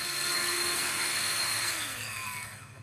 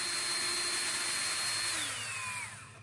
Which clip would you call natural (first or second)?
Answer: second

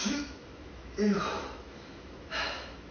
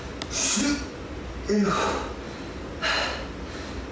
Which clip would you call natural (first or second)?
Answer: second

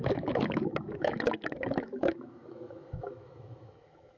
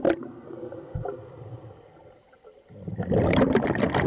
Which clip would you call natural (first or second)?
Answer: second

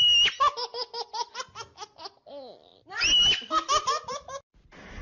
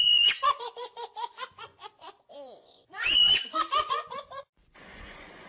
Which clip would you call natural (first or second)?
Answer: first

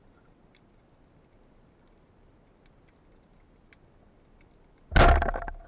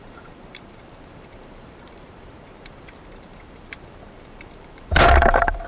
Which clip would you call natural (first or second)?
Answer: first